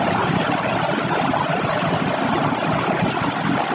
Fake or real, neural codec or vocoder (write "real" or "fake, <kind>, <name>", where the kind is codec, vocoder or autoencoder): fake, vocoder, BigVGAN v2